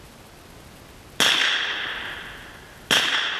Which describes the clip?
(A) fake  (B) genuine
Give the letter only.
B